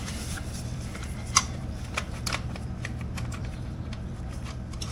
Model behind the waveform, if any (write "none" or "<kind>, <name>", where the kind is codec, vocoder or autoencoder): vocoder, BigVGAN v2